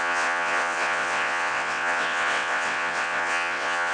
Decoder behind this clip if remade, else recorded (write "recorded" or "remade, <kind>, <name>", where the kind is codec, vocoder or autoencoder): remade, vocoder, WaveNeXt